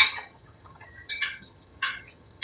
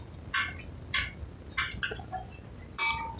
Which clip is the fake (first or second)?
first